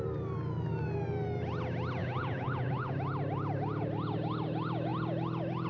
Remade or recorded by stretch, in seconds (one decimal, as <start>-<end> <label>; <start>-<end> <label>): 0.0-2.0 recorded; 2.0-2.9 remade; 2.9-5.7 recorded